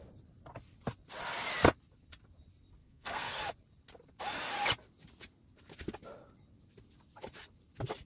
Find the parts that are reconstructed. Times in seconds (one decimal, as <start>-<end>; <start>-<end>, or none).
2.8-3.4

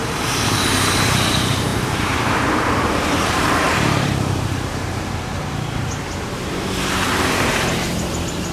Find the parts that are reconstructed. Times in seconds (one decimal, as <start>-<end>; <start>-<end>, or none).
0.0-8.5

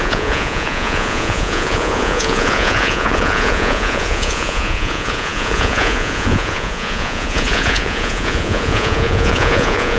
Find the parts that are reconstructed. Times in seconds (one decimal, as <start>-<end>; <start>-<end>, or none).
0.0-10.0

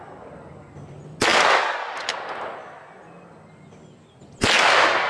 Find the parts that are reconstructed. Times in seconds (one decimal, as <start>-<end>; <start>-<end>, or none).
none

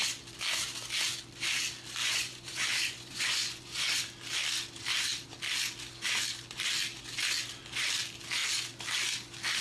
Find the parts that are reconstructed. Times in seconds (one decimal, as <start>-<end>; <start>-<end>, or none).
2.0-4.0

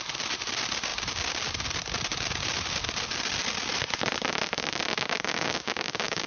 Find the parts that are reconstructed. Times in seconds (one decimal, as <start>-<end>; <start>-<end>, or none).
4.9-6.3